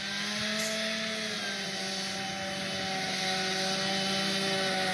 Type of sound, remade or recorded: recorded